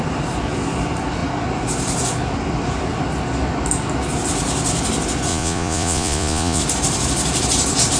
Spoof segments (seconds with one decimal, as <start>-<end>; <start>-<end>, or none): 5.3-6.6

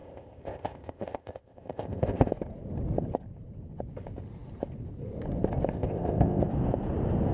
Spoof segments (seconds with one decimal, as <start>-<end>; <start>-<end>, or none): 0.0-2.3; 5.7-6.4

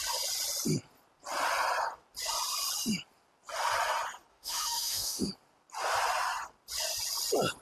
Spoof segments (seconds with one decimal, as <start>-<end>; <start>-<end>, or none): 4.3-5.3

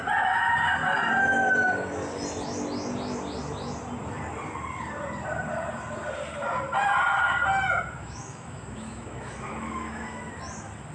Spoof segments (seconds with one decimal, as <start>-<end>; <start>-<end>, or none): 8.0-10.2

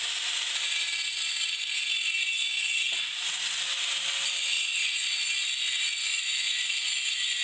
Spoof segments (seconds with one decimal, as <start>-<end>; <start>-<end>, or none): 6.1-6.7

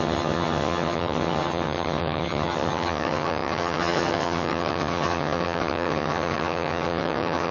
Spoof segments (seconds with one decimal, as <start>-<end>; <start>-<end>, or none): 0.0-7.5

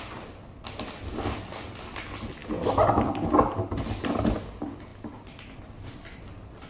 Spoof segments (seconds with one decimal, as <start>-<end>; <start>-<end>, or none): none